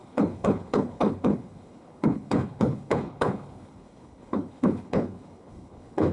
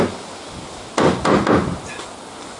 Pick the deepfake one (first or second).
first